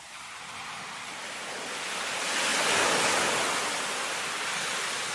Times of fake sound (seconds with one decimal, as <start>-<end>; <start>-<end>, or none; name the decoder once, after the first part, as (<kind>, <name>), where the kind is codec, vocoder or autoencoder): none